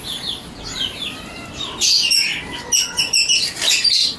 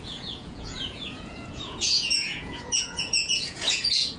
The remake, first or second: second